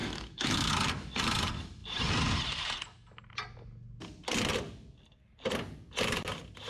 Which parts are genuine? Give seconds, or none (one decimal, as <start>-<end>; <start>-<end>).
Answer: 0.7-6.7